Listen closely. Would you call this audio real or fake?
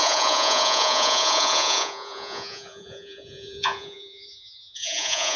fake